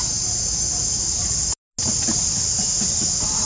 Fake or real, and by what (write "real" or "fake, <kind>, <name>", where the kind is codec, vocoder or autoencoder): real